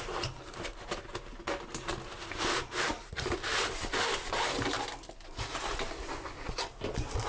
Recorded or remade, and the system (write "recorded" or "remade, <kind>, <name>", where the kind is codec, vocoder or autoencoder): recorded